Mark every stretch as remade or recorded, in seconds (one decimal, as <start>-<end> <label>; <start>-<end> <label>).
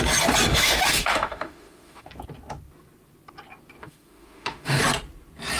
0.0-0.5 recorded; 0.5-2.1 remade; 2.1-3.8 recorded; 3.8-4.8 remade; 4.8-5.6 recorded